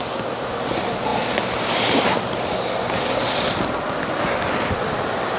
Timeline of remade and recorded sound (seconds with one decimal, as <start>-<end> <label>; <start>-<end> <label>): 0.0-5.4 recorded